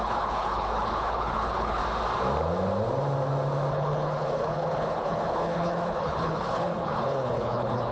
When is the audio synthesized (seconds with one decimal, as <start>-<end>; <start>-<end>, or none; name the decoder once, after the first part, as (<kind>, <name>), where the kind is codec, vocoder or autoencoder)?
0.0-1.8 (codec, HILCodec); 3.7-7.9